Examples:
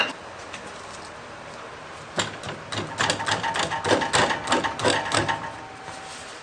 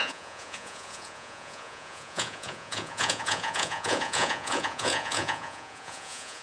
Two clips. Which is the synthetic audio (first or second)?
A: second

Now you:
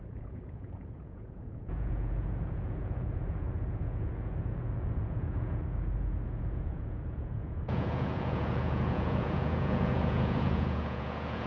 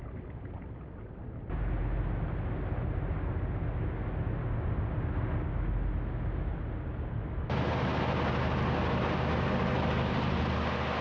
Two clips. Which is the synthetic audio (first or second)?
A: first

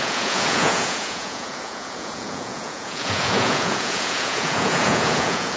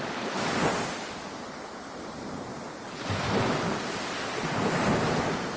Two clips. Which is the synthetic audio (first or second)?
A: first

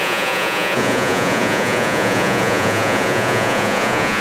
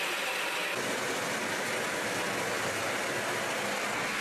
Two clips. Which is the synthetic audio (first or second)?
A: first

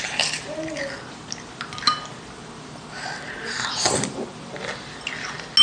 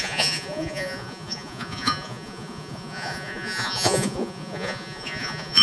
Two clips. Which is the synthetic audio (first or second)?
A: second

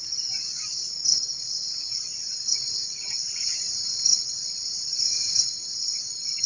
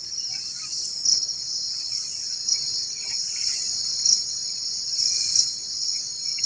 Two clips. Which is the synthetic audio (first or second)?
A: first